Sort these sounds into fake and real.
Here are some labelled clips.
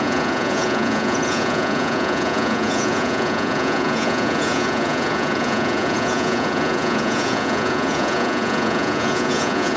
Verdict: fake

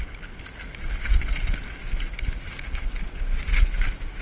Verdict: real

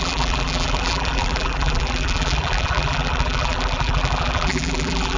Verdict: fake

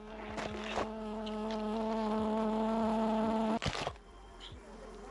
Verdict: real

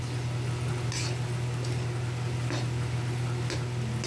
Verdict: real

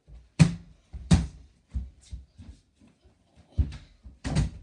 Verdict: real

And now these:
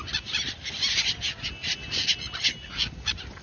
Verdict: real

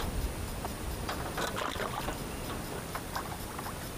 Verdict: real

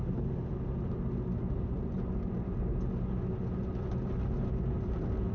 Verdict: real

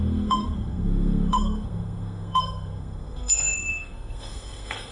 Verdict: fake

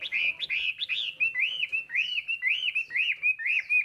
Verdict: real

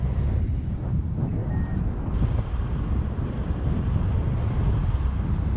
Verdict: real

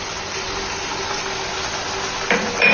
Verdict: real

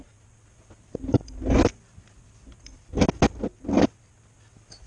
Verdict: real